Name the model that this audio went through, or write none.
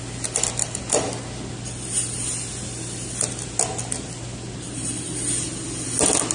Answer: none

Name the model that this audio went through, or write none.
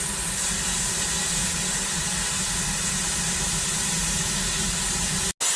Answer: none